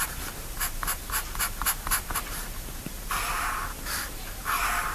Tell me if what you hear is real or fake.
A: fake